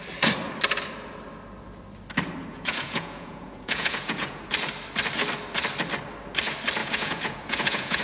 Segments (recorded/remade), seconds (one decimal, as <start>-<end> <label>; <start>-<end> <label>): 0.0-2.5 recorded; 2.5-4.5 remade; 4.5-6.8 recorded; 6.8-8.0 remade